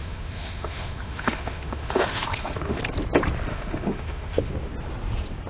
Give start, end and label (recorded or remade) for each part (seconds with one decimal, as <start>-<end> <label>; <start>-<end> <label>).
0.0-2.8 remade; 2.8-3.5 recorded; 3.5-4.5 remade; 4.5-5.5 recorded

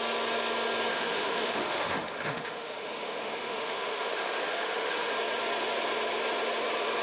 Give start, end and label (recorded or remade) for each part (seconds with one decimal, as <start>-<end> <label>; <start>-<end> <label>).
0.0-0.9 recorded; 0.9-5.1 remade; 5.1-7.0 recorded